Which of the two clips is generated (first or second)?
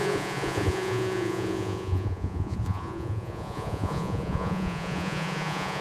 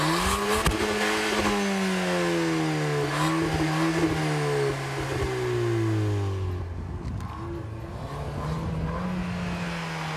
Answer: first